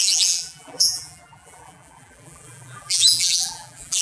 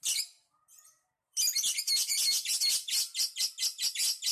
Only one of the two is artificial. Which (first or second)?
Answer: first